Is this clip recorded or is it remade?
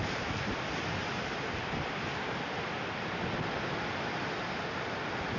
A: recorded